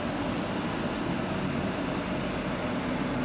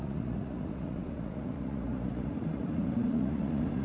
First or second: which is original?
first